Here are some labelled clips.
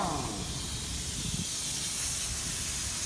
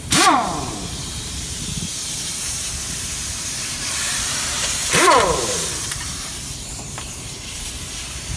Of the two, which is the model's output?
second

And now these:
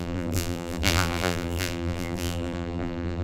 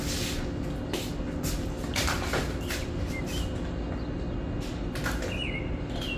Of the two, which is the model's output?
first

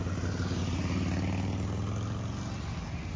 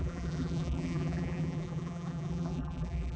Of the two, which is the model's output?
second